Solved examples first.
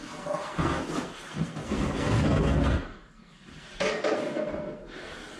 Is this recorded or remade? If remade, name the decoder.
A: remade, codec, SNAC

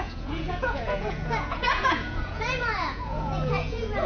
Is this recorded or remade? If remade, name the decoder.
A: remade, vocoder, Vocos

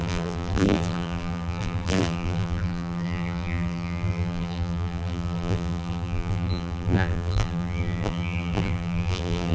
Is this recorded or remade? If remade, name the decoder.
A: remade, vocoder, BigVGAN v2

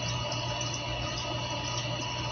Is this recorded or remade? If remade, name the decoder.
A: recorded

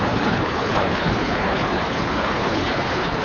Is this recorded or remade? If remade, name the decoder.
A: remade, codec, HILCodec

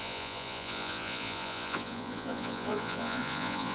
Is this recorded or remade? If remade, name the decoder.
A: remade, vocoder, Vocos